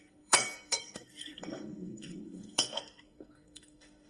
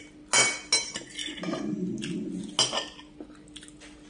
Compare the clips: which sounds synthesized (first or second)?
first